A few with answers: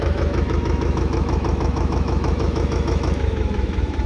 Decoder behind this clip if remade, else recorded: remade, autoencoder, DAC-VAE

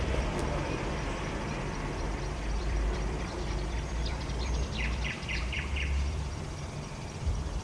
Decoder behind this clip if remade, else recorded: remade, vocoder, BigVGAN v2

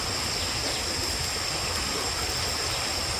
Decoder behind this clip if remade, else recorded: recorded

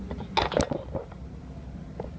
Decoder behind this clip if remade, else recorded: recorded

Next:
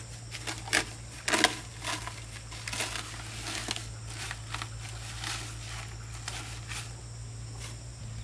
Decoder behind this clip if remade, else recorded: recorded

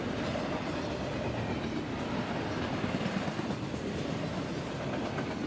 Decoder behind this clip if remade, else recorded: recorded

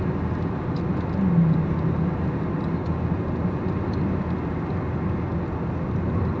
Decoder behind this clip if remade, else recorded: recorded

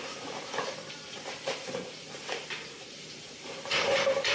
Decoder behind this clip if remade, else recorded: remade, vocoder, BigVGAN v2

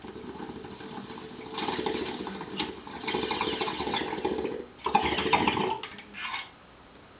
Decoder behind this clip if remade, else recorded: recorded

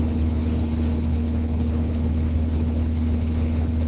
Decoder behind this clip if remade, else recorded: remade, codec, HILCodec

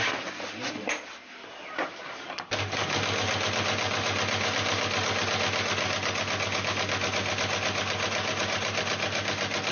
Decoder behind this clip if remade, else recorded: recorded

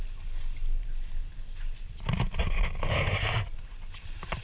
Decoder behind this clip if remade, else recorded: recorded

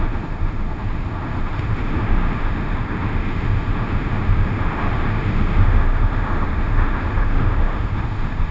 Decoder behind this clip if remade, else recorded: remade, autoencoder, DAC-VAE